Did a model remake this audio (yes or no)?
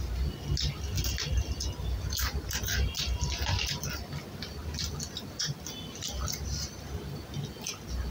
no